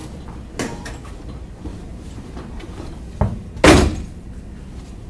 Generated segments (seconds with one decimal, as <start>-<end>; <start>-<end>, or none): 1.7-3.4